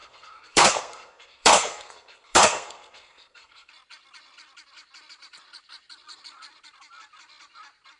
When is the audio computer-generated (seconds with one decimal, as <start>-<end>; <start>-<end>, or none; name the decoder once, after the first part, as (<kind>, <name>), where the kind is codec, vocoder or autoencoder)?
0.0-3.7 (codec, SNAC)